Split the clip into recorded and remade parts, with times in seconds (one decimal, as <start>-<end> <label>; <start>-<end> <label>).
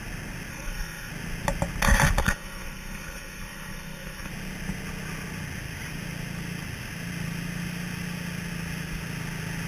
0.0-0.5 recorded; 0.5-1.1 remade; 1.1-2.2 recorded; 2.2-4.3 remade; 4.3-9.7 recorded